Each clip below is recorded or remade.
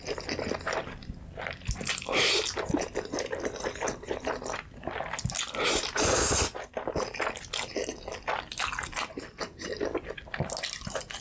recorded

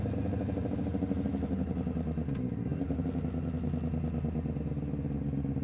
recorded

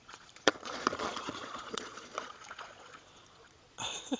remade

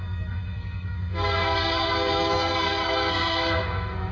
remade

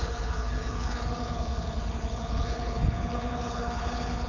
remade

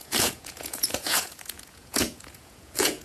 remade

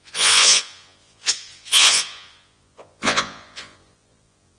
remade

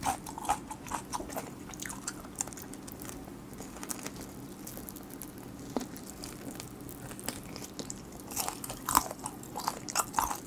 recorded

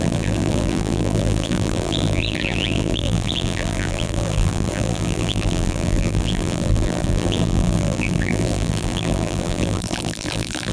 remade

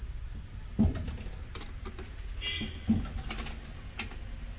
recorded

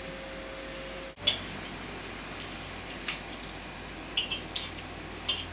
recorded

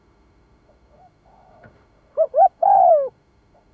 remade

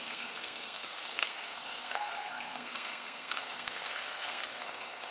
remade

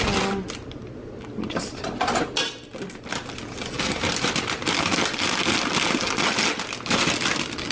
recorded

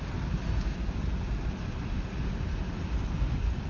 recorded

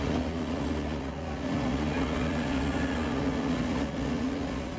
remade